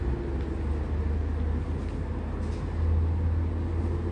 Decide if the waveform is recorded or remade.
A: recorded